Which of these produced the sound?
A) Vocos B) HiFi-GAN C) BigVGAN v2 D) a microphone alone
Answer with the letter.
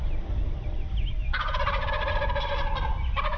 D